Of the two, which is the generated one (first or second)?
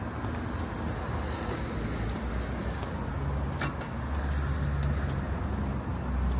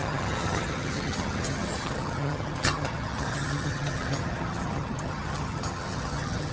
second